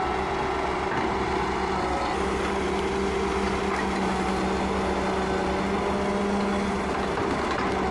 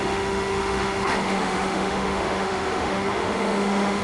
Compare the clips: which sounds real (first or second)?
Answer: first